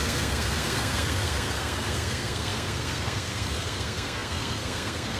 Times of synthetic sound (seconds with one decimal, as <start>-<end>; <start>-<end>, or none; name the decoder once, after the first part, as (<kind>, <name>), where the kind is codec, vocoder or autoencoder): 0.0-5.2 (codec, SNAC)